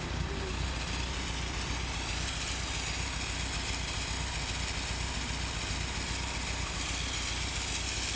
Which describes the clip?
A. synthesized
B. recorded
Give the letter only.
B